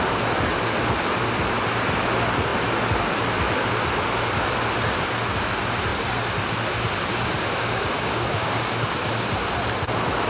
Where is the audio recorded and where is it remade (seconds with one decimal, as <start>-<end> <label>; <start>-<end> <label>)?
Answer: 0.0-7.4 recorded; 7.4-8.7 remade; 8.7-10.3 recorded